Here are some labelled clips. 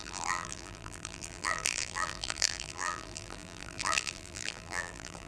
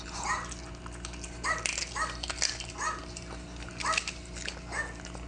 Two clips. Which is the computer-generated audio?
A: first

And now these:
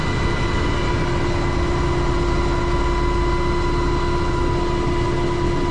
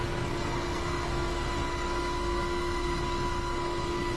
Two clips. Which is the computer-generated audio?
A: second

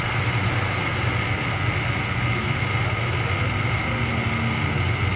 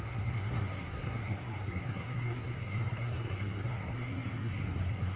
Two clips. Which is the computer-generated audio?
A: second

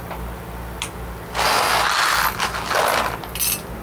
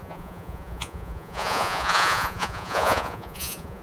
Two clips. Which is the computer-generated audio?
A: second